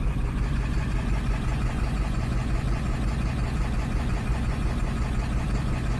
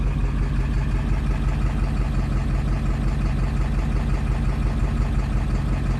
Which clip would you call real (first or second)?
second